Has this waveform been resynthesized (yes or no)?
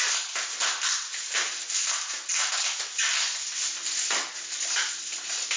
no